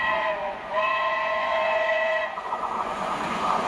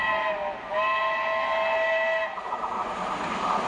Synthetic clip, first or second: first